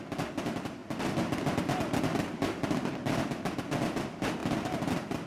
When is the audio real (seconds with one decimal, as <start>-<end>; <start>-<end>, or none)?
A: 0.0-5.3